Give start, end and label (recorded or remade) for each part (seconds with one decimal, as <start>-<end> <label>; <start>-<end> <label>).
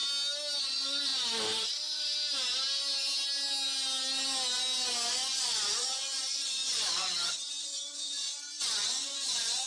0.0-0.6 recorded; 0.6-1.1 remade; 1.1-5.1 recorded; 5.1-9.7 remade